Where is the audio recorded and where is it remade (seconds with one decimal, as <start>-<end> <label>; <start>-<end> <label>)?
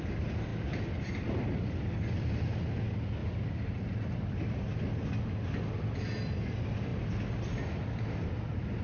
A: 0.0-3.2 recorded; 3.2-4.3 remade; 4.3-8.8 recorded